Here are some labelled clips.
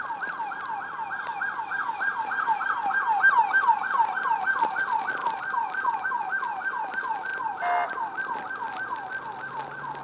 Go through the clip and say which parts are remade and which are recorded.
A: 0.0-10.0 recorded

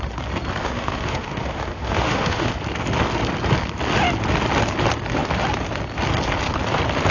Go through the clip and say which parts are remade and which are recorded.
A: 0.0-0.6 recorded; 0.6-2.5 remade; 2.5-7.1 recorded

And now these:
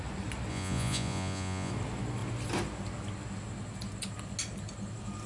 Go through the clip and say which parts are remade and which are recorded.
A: 0.0-0.5 recorded; 0.5-1.7 remade; 1.7-5.3 recorded

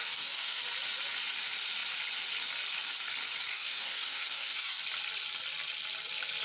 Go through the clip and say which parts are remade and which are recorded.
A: 0.0-0.6 remade; 0.6-3.5 recorded; 3.5-4.8 remade; 4.8-6.4 recorded

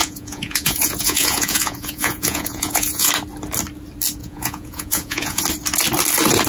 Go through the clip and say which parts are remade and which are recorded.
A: 0.0-3.1 remade; 3.1-4.2 recorded; 4.2-5.4 remade; 5.4-6.5 recorded

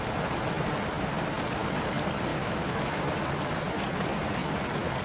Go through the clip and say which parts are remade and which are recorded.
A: 0.0-2.3 recorded; 2.3-3.0 remade; 3.0-5.0 recorded